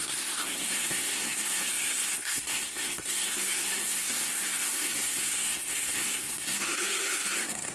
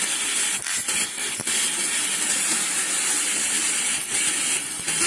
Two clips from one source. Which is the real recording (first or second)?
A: second